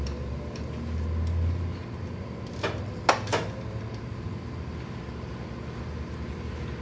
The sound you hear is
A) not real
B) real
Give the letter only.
B